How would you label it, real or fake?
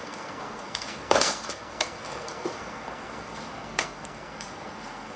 fake